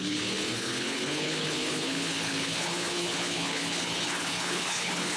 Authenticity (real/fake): fake